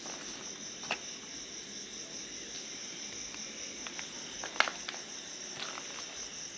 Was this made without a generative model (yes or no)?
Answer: yes